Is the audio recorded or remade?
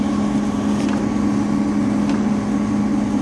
recorded